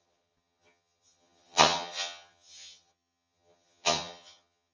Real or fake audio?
fake